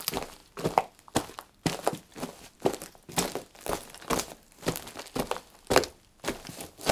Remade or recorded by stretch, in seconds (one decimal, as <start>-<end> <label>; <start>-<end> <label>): 0.0-6.9 recorded